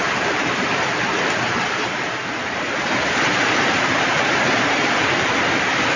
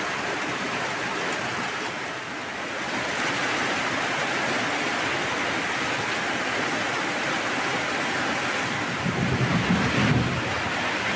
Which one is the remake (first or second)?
first